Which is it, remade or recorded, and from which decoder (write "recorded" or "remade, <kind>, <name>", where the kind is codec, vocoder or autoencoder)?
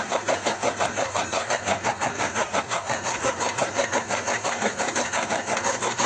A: remade, codec, SNAC